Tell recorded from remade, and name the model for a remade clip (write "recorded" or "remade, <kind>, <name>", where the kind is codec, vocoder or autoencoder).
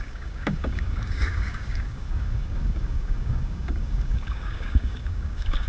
remade, codec, DAC